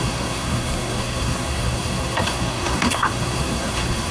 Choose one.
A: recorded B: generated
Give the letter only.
B